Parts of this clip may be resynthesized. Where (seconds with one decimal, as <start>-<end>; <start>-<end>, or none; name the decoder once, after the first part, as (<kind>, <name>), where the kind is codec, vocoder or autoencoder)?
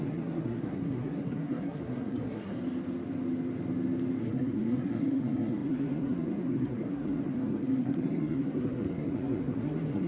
0.0-2.6 (codec, SNAC); 4.2-10.1